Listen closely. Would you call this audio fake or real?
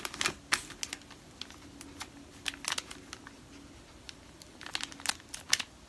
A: real